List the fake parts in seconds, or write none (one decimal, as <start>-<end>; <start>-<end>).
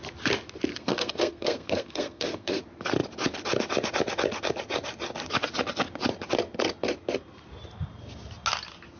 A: 0.7-2.6